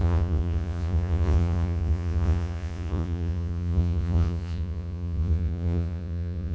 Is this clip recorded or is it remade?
remade